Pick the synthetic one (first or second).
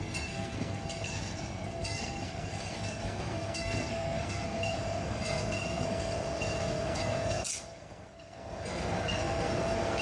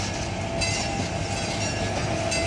first